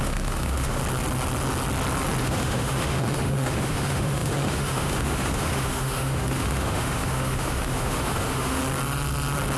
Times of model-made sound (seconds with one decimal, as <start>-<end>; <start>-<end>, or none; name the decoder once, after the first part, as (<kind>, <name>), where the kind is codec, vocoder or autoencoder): 0.0-0.8 (autoencoder, DAC-VAE); 2.2-8.6